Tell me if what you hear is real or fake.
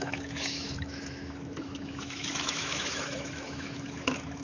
fake